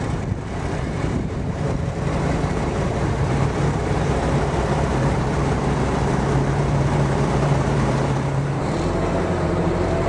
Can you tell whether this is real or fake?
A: fake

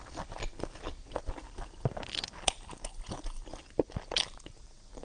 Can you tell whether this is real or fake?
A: real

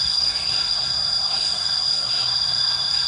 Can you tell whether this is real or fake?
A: fake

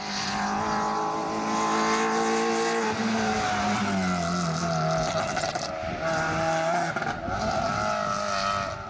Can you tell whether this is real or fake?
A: real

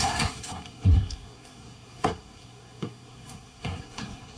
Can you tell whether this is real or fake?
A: fake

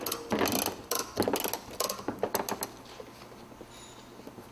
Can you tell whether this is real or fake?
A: real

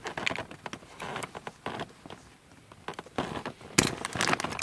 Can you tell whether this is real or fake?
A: real